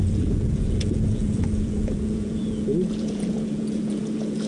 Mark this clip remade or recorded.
remade